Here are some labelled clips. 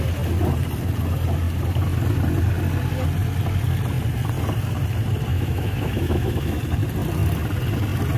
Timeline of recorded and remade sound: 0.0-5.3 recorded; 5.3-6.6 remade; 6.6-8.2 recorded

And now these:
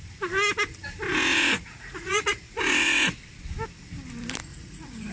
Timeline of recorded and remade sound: 0.0-1.1 recorded; 1.1-3.1 remade; 3.1-4.5 recorded; 4.5-5.1 remade

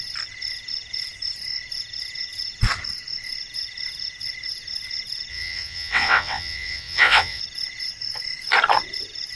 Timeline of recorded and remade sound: 0.0-5.3 recorded; 5.3-7.4 remade; 7.4-9.4 recorded